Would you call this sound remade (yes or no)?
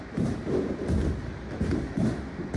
no